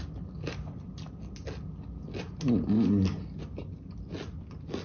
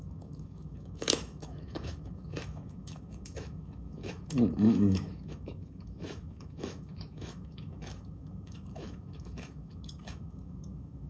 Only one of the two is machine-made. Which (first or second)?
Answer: second